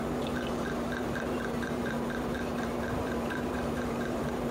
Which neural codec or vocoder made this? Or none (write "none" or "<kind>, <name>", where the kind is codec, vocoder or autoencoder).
vocoder, BigVGAN v2